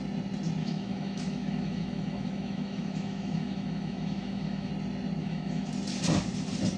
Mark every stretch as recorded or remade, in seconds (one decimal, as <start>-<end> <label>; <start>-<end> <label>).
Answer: 0.0-0.6 recorded; 0.6-4.7 remade; 4.7-5.2 recorded; 5.2-5.7 remade; 5.7-6.8 recorded